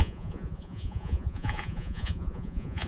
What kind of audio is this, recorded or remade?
remade